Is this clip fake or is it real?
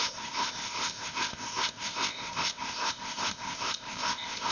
fake